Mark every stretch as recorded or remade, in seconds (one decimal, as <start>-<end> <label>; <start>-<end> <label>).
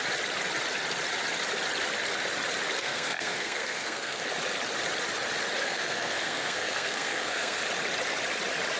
0.0-2.8 recorded; 2.8-4.3 remade; 4.3-5.6 recorded; 5.6-7.6 remade; 7.6-8.8 recorded